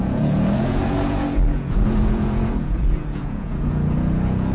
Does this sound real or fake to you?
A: fake